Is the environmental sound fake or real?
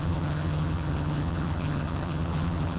fake